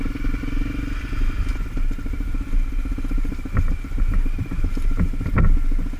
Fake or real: real